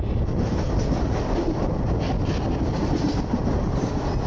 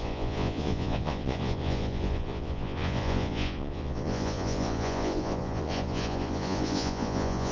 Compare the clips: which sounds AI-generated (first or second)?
second